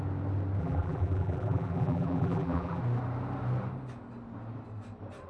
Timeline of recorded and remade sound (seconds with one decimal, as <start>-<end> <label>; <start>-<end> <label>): 0.0-0.6 recorded; 0.6-2.8 remade; 2.8-5.3 recorded